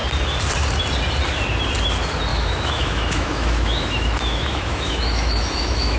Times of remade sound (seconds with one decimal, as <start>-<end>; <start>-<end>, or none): 2.3-6.0